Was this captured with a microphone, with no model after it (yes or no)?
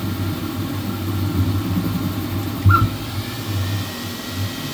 yes